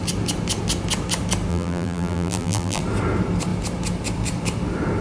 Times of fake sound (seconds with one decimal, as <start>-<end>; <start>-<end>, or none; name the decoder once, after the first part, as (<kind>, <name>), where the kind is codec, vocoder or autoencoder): 1.5-2.8 (vocoder, BigVGAN v2)